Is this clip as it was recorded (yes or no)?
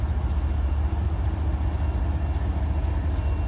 yes